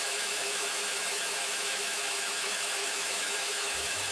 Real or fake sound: fake